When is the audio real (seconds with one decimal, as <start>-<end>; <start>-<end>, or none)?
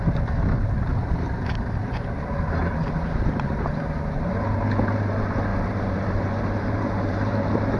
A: 0.0-0.9; 1.6-2.6; 3.8-5.5